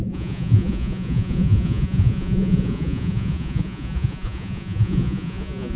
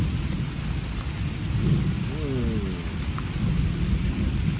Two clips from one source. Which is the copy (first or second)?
first